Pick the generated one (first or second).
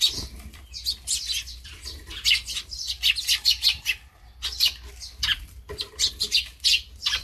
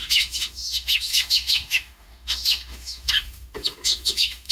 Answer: second